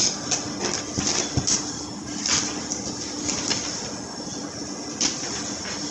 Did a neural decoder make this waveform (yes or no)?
no